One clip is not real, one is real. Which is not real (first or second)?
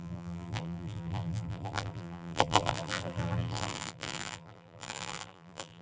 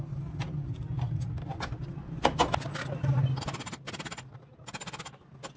first